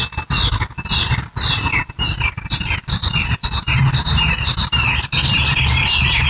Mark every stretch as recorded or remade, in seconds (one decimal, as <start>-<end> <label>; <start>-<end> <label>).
0.0-6.3 recorded

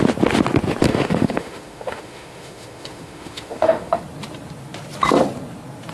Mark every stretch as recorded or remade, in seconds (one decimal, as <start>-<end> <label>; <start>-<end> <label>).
0.0-0.9 recorded; 0.9-4.0 remade; 4.0-5.9 recorded

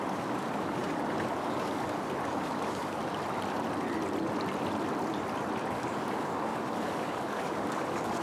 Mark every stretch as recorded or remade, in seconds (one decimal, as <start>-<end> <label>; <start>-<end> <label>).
0.0-3.0 remade; 3.0-5.7 recorded; 5.7-8.2 remade

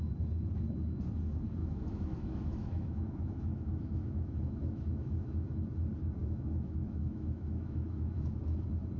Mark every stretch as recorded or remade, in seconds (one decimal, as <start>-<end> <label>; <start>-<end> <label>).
0.0-1.6 recorded; 1.6-5.6 remade; 5.6-6.2 recorded; 6.2-8.4 remade; 8.4-9.0 recorded

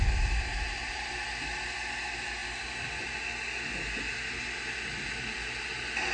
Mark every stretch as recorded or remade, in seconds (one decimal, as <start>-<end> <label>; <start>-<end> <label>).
0.0-6.1 recorded

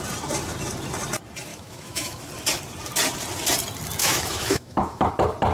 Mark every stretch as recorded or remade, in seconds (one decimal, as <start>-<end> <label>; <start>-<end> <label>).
0.0-1.5 recorded; 1.5-2.2 remade; 2.2-4.0 recorded; 4.0-5.1 remade; 5.1-5.5 recorded

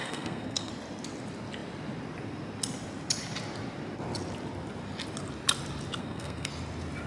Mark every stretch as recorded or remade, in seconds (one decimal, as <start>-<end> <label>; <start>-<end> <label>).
0.0-0.7 remade; 0.7-6.0 recorded; 6.0-6.5 remade; 6.5-7.1 recorded

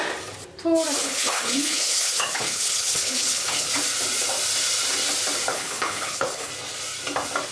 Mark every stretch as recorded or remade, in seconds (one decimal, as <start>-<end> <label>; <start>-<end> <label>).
0.0-1.0 recorded; 1.0-3.7 remade; 3.7-5.5 recorded; 5.5-6.5 remade; 6.5-7.5 recorded